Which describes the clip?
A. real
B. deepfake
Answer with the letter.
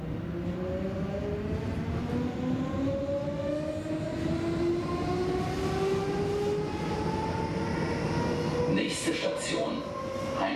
A